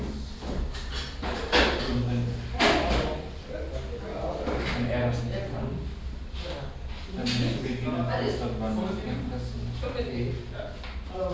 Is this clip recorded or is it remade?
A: recorded